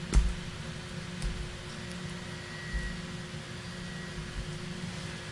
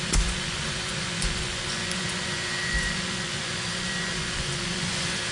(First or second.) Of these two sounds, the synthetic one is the second